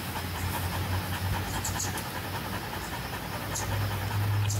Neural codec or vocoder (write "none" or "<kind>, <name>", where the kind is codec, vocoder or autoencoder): none